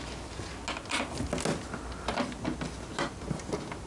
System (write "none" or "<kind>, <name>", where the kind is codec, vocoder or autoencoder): none